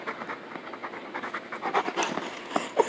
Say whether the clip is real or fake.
real